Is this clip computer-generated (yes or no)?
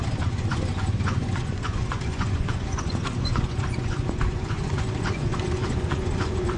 yes